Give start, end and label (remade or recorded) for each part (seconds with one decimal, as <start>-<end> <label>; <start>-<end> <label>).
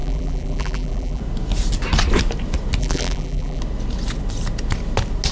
0.0-1.2 remade; 1.2-2.8 recorded; 2.8-3.6 remade; 3.6-5.3 recorded